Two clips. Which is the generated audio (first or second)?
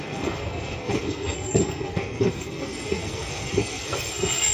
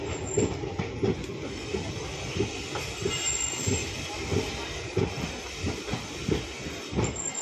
first